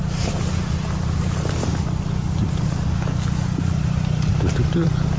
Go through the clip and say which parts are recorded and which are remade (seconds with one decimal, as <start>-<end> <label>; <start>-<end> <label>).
0.0-5.2 recorded